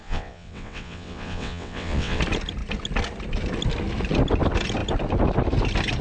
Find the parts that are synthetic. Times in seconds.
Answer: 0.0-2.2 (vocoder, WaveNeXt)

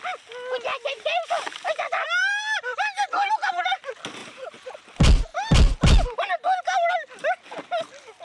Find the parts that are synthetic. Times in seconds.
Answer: 0.7-3.8 (vocoder, BigVGAN v2); 4.2-4.8

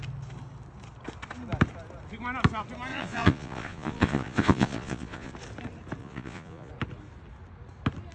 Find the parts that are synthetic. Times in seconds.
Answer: 2.9-5.3 (vocoder, Vocos); 6.0-6.7

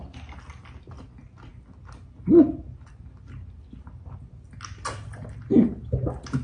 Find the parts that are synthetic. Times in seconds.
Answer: none

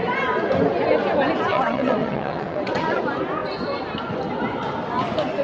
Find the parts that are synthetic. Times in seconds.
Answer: 1.5-3.0 (vocoder, WaveNeXt)

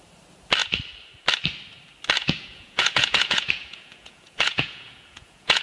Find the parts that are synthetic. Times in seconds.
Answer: 2.2-5.6 (vocoder, Vocos)

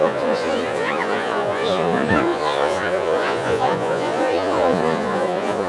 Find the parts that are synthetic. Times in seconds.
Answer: 0.0-5.7 (vocoder, Vocos)